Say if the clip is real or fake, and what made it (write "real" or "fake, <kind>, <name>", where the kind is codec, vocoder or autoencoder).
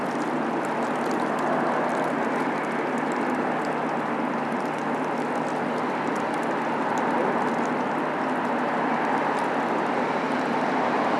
real